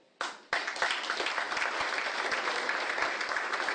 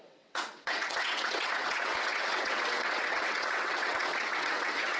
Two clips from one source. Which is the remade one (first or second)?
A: second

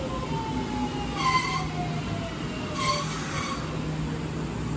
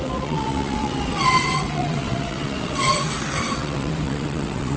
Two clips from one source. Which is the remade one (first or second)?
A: second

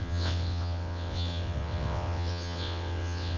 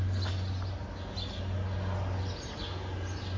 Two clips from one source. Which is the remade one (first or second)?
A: first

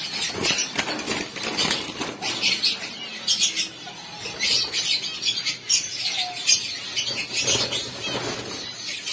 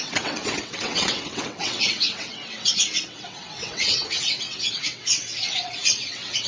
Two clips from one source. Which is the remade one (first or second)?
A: second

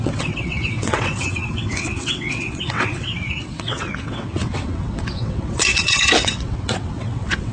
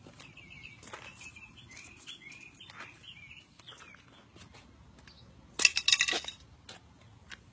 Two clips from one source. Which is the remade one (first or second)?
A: first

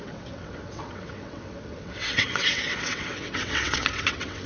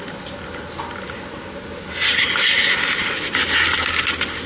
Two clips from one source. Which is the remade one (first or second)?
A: first